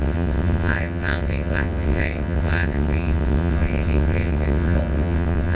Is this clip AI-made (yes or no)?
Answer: yes